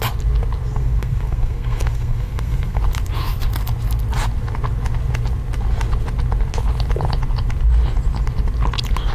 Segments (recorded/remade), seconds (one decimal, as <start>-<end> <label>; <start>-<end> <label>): 0.0-0.8 recorded; 0.8-2.8 remade; 2.8-9.1 recorded